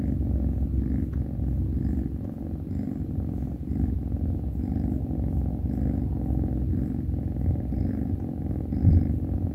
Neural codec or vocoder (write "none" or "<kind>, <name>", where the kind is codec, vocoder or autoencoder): none